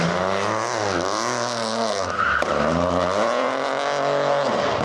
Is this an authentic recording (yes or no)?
yes